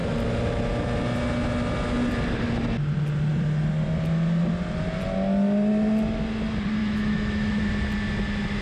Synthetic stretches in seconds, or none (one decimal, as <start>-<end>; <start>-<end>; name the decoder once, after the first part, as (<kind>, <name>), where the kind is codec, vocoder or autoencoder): 6.8-7.7 (autoencoder, DAC-VAE)